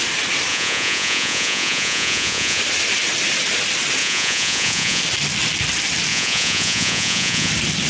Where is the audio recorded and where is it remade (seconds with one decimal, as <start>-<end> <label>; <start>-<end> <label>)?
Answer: 0.0-0.5 recorded; 0.5-2.6 remade; 2.6-4.0 recorded; 4.0-5.0 remade; 5.0-6.1 recorded; 6.1-7.5 remade; 7.5-7.9 recorded